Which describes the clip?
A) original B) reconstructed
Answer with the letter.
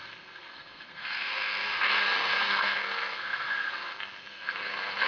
B